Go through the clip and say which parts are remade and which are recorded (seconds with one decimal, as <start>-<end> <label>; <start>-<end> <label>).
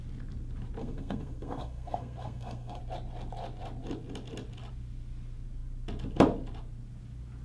0.0-0.8 recorded; 0.8-2.8 remade; 2.8-7.4 recorded